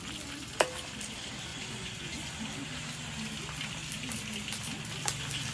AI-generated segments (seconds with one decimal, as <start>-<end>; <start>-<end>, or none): 1.5-2.4